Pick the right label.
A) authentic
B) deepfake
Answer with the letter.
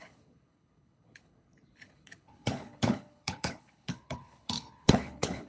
B